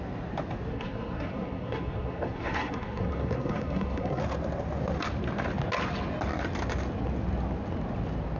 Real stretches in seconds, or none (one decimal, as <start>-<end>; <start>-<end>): 0.0-0.7; 4.2-8.4